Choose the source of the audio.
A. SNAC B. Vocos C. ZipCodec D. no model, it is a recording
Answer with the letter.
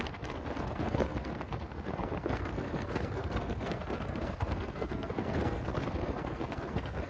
A